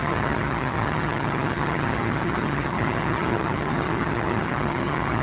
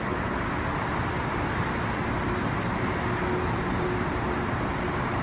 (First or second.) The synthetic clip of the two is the first